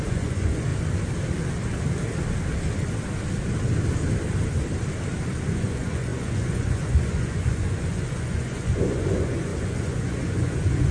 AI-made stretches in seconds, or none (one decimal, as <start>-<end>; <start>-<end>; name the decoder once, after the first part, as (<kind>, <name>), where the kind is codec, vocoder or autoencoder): 0.0-0.7 (vocoder, Vocos); 5.5-10.9